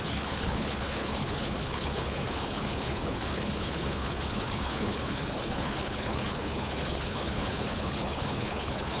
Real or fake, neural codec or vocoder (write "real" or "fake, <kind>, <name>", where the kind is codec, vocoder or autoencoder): fake, codec, HILCodec